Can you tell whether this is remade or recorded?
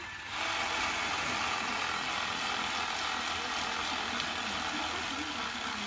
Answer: recorded